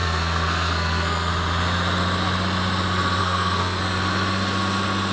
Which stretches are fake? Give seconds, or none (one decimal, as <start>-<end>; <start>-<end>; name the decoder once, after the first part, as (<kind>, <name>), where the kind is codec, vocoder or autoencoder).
0.0-1.3 (codec, SNAC); 3.2-3.8